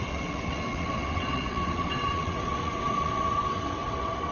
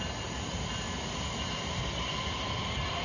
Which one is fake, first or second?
first